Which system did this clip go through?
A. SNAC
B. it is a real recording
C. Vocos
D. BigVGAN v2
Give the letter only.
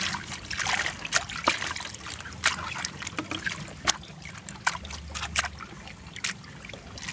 B